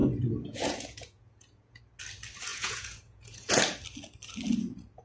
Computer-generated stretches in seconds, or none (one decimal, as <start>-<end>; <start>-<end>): 0.0-1.8; 2.5-3.6